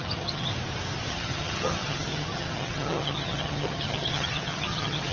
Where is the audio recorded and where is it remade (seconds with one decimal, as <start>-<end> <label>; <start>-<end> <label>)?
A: 0.0-0.5 remade; 0.5-1.1 recorded; 1.1-5.1 remade